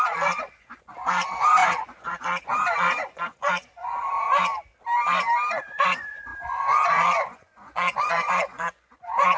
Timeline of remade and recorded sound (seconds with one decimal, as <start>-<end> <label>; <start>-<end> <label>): 0.0-4.3 remade; 4.3-5.5 recorded; 5.5-9.4 remade